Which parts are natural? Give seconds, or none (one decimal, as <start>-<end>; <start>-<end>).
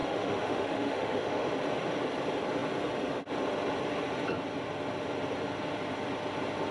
1.5-6.7